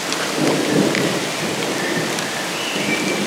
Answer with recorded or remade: recorded